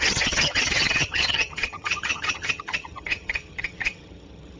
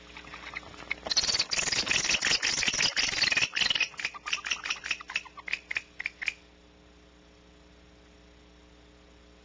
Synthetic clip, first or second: first